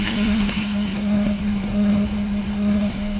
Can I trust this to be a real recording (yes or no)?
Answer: no